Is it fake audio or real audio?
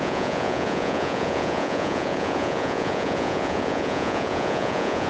fake